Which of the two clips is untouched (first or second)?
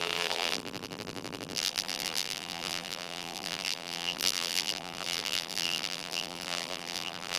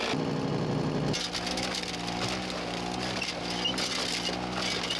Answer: second